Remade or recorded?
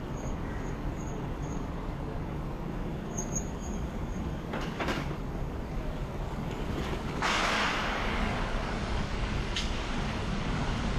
remade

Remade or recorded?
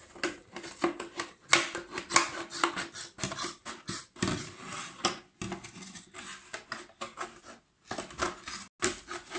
recorded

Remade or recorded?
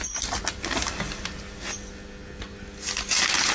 recorded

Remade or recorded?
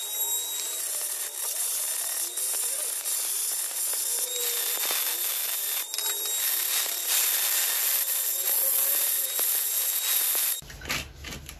recorded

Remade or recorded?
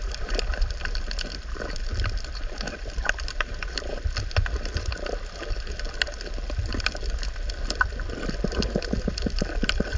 recorded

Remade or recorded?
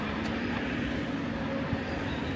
recorded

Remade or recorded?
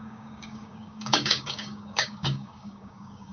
remade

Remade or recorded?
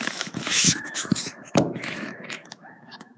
remade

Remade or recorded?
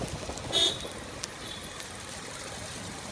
recorded